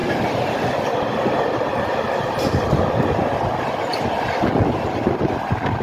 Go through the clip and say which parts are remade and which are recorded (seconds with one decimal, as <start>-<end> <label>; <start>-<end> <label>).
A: 0.0-5.8 recorded